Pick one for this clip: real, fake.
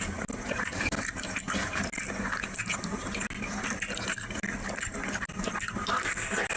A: real